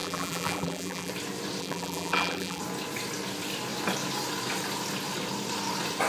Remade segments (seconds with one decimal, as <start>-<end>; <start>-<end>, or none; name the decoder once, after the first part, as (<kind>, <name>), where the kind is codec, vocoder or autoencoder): 0.0-1.1 (vocoder, BigVGAN v2); 1.6-2.6